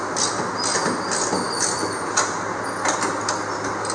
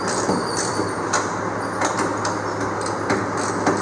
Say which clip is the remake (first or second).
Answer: second